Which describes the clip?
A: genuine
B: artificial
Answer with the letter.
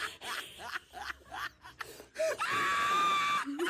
A